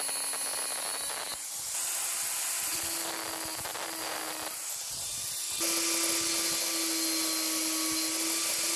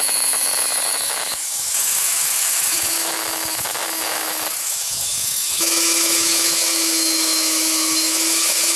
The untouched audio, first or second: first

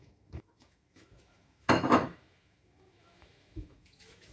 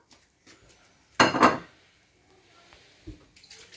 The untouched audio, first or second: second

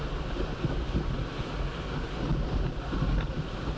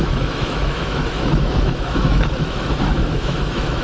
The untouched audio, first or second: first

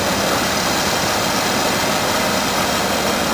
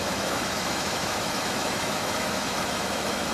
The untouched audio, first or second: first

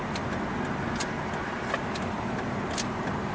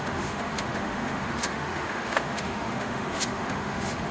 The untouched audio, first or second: first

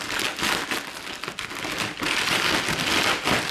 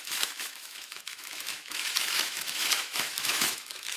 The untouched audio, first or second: first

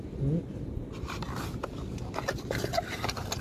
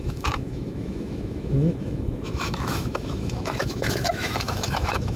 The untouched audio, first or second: first